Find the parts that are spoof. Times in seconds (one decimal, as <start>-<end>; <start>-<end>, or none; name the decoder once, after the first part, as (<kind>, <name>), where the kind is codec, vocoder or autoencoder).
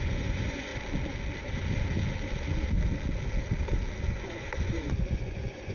0.0-0.7 (vocoder, Vocos); 4.1-5.7